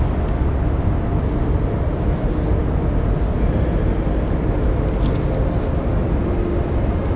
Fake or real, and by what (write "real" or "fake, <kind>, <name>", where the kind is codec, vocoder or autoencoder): real